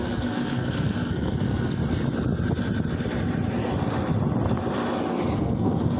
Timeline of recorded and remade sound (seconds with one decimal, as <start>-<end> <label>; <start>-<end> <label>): 0.0-1.8 remade; 1.8-5.4 recorded; 5.4-6.0 remade